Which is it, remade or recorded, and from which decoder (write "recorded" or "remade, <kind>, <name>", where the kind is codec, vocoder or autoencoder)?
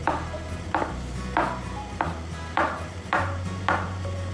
remade, vocoder, BigVGAN v2